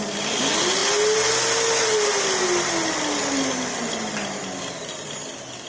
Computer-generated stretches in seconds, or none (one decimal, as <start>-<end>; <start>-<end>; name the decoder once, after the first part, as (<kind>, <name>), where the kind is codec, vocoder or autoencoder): none